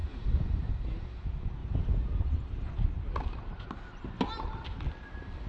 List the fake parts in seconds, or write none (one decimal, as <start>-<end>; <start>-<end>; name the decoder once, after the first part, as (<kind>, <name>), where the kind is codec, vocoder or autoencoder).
0.0-0.7 (vocoder, BigVGAN v2); 1.6-2.7